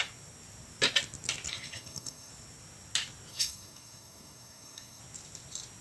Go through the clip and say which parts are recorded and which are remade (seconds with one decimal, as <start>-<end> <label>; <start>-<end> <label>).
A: 0.0-1.5 recorded; 1.5-2.3 remade; 2.3-3.3 recorded; 3.3-5.0 remade; 5.0-5.8 recorded